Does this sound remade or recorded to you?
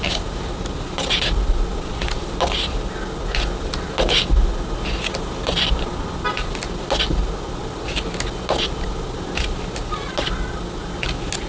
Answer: recorded